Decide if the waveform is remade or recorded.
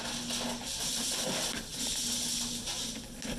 recorded